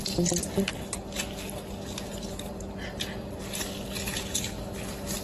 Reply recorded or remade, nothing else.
recorded